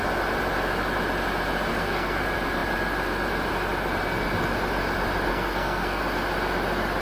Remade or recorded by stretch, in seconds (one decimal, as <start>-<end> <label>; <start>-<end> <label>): 0.0-1.7 recorded; 1.7-2.2 remade; 2.2-5.3 recorded; 5.3-6.0 remade; 6.0-7.0 recorded